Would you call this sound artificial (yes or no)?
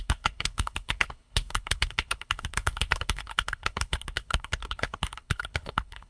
yes